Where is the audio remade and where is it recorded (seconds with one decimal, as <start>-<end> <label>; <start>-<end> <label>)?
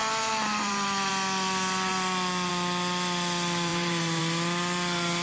0.0-1.1 remade; 1.1-3.7 recorded; 3.7-4.2 remade; 4.2-5.2 recorded